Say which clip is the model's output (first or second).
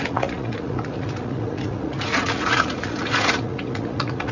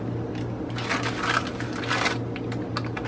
first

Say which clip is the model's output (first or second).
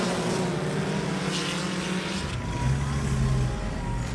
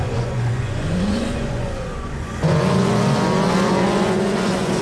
second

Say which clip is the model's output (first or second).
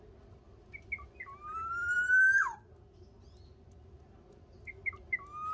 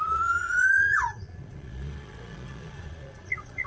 second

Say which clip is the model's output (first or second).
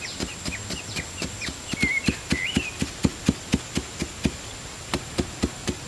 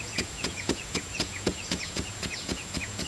second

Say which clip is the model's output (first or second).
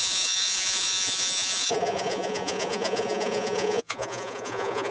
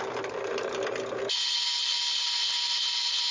first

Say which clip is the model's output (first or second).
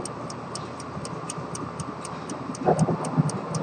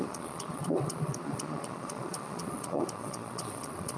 second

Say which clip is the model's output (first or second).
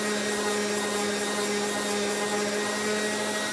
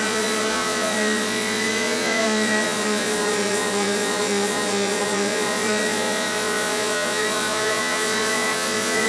second